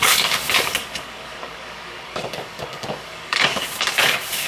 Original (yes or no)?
no